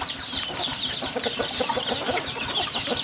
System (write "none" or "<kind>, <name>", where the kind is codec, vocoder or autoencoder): none